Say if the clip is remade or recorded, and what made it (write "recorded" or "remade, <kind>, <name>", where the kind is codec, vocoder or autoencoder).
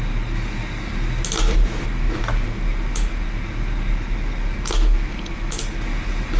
recorded